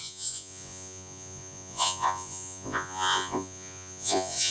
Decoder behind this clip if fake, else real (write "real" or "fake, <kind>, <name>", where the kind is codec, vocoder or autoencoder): fake, vocoder, Vocos